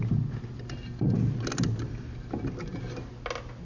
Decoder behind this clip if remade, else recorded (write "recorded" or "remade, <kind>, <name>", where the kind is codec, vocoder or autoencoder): recorded